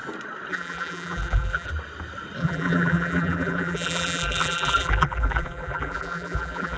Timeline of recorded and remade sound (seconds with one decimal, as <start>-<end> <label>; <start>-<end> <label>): 0.0-0.5 recorded; 0.5-1.7 remade; 1.7-2.4 recorded; 2.4-6.8 remade